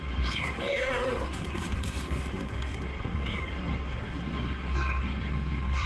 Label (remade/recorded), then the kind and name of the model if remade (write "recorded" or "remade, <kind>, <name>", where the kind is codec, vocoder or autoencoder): remade, codec, SNAC